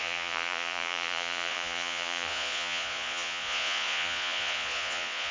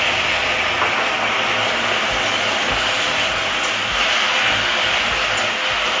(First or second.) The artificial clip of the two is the first